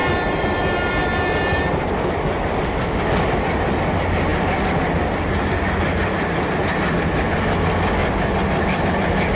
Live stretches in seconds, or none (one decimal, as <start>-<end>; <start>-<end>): 1.8-8.0; 8.9-9.4